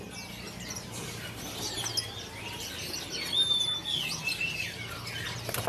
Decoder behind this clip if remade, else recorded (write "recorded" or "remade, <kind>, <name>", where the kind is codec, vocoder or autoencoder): recorded